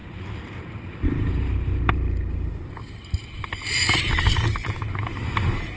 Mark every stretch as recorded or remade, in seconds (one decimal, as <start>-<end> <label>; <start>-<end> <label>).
0.0-0.6 recorded; 0.6-3.2 remade; 3.2-4.0 recorded; 4.0-5.8 remade